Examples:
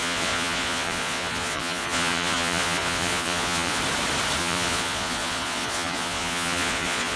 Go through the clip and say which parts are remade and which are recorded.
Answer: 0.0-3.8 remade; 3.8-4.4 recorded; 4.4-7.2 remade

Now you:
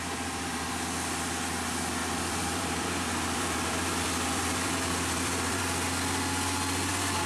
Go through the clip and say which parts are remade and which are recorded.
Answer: 0.0-0.7 remade; 0.7-2.0 recorded; 2.0-5.6 remade; 5.6-7.3 recorded

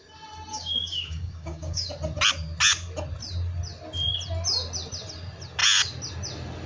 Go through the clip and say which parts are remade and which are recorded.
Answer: 0.0-0.5 recorded; 0.5-1.9 remade; 1.9-6.7 recorded

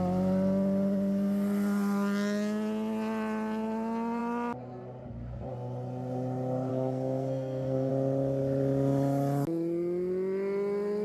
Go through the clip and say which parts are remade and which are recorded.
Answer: 0.0-6.7 recorded; 6.7-7.9 remade; 7.9-11.0 recorded